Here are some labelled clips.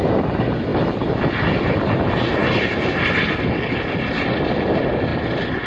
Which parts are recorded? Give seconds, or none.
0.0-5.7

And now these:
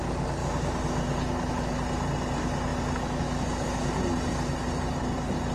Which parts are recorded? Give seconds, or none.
0.0-5.5

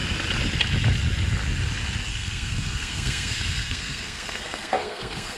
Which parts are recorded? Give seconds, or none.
0.0-2.1

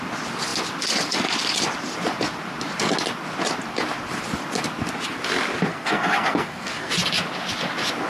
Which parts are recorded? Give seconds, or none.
0.0-5.7; 6.9-8.1

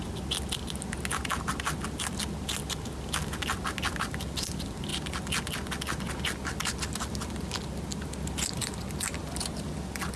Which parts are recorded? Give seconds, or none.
0.0-10.2